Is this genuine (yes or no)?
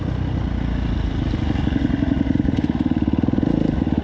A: yes